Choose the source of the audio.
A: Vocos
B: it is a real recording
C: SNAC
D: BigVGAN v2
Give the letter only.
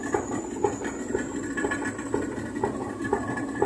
B